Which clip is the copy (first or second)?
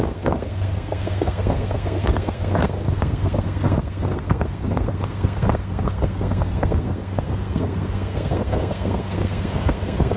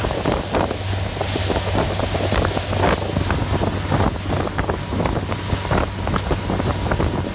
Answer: first